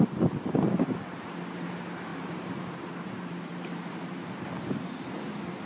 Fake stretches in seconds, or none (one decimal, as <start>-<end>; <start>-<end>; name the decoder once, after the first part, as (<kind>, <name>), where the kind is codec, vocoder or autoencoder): 2.1-4.6 (vocoder, BigVGAN v2)